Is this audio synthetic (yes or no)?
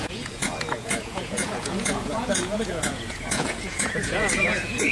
yes